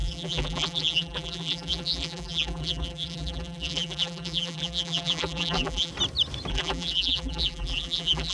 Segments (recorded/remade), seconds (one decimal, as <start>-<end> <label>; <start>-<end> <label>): 0.0-5.9 remade; 5.9-6.5 recorded; 6.5-8.3 remade